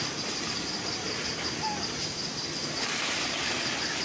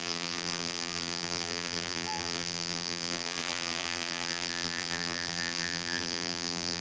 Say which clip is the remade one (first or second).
second